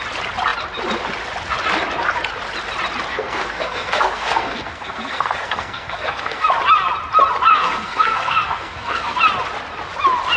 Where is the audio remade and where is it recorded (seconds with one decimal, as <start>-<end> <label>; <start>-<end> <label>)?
0.0-3.1 recorded; 3.1-6.5 remade; 6.5-7.5 recorded; 7.5-9.2 remade; 9.2-10.4 recorded